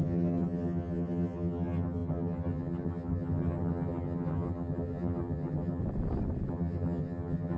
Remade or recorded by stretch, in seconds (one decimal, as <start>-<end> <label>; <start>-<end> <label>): 0.0-5.8 remade; 5.8-6.5 recorded; 6.5-7.6 remade